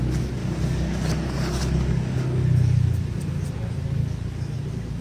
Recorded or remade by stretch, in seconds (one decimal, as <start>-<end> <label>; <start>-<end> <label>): 0.0-0.4 recorded; 0.4-3.4 remade; 3.4-4.0 recorded; 4.0-4.6 remade; 4.6-5.0 recorded